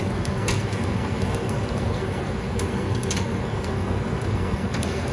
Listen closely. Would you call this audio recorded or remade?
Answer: remade